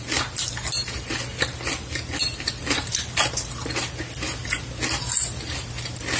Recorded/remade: recorded